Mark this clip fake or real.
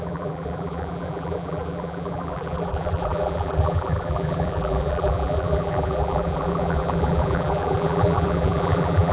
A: fake